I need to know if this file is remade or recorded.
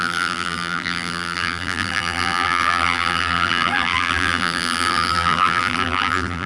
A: remade